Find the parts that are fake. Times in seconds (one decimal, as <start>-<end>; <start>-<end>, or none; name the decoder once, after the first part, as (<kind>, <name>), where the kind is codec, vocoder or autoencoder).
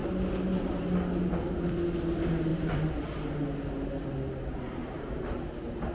2.5-3.3 (vocoder, BigVGAN v2); 4.8-5.4